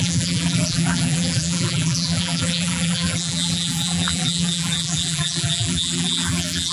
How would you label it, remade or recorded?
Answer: remade